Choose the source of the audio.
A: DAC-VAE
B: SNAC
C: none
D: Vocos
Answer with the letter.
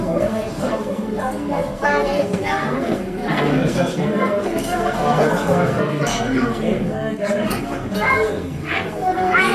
B